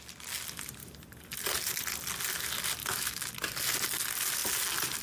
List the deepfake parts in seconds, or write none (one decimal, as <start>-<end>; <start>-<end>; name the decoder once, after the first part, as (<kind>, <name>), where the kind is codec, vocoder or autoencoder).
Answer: 2.8-3.3 (autoencoder, DAC-VAE)